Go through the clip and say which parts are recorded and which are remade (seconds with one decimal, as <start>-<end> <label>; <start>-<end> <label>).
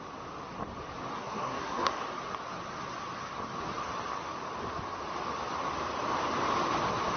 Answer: 0.0-1.2 recorded; 1.2-2.0 remade; 2.0-7.2 recorded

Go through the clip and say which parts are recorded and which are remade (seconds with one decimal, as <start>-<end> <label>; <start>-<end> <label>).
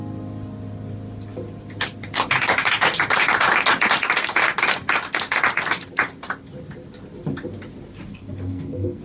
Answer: 0.0-8.1 recorded; 8.1-9.0 remade